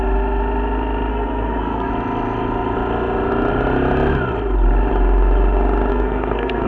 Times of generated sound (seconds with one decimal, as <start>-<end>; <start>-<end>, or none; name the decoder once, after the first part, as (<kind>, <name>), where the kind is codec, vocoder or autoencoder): 1.1-1.9 (codec, SNAC); 5.9-6.7

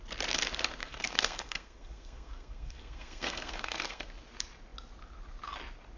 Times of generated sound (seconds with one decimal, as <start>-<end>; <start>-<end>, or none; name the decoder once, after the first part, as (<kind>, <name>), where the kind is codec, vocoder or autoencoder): 0.8-4.1 (codec, SNAC)

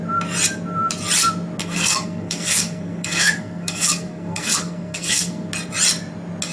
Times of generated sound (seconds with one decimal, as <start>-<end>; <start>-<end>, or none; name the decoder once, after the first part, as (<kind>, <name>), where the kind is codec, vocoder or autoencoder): 1.6-5.5 (codec, SNAC)

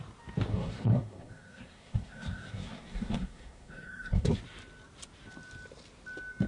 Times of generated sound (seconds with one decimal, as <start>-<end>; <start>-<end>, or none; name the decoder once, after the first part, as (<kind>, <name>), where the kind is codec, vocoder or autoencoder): 0.5-4.4 (codec, SNAC)

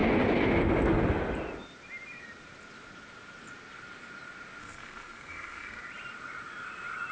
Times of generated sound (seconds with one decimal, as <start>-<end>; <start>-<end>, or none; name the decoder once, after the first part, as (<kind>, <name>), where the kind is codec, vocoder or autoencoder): 4.6-5.8 (codec, SNAC)

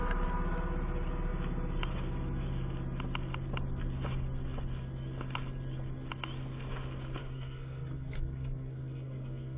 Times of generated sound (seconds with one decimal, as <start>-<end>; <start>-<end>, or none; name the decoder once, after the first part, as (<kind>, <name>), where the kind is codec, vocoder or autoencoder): 7.2-9.6 (codec, SNAC)

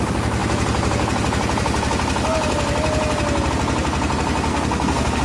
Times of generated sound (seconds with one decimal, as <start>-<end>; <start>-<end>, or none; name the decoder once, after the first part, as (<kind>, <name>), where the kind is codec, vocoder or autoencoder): 4.5-5.2 (codec, SNAC)

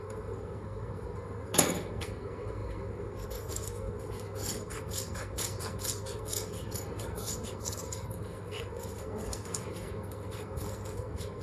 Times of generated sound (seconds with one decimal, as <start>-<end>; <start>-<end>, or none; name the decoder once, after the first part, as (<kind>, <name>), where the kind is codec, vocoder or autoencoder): 0.0-11.4 (codec, SNAC)